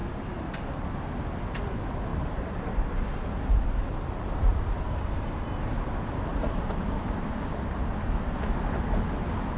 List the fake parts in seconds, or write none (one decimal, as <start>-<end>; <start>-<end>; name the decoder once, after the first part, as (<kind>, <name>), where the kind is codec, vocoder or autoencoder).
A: 0.0-0.6 (vocoder, BigVGAN v2); 2.1-3.6; 6.3-7.5